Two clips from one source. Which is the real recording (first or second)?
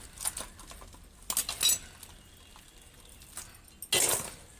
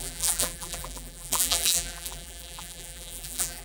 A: first